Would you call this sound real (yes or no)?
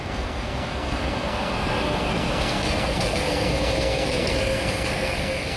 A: no